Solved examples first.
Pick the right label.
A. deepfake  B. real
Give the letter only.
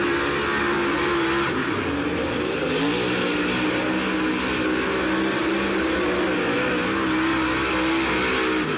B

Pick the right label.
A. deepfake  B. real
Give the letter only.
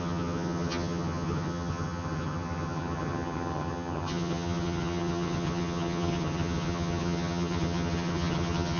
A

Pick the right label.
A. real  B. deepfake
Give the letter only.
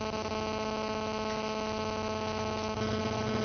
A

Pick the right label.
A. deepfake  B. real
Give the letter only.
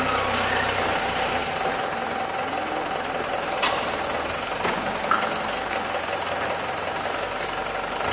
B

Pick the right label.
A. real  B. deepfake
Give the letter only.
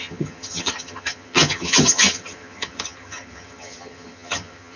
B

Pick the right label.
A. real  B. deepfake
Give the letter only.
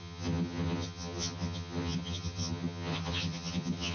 B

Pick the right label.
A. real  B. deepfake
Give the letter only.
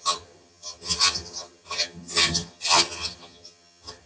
B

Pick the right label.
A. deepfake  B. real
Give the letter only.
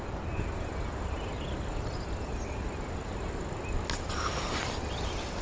B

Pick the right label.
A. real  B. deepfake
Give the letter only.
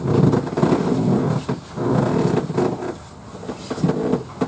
A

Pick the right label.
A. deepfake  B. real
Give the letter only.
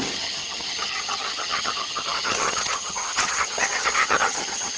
A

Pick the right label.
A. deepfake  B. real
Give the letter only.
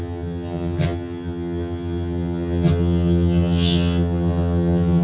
A